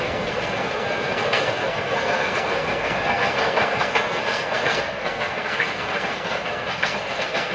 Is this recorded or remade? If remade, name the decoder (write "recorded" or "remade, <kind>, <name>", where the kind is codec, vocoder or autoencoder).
remade, codec, SNAC